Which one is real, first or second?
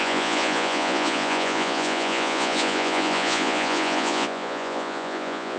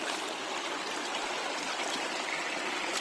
second